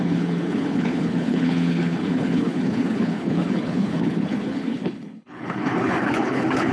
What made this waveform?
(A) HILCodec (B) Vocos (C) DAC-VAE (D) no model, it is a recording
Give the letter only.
A